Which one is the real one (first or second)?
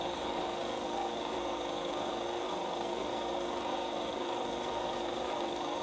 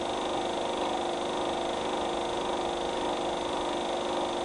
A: second